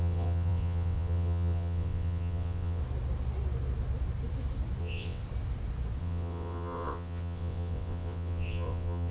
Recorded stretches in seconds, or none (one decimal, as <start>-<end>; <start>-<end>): 2.8-4.8; 5.2-6.0